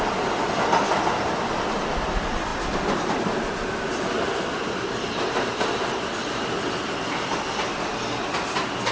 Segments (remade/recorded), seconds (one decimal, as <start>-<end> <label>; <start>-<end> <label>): 0.0-8.9 recorded